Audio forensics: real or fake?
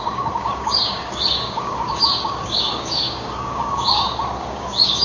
fake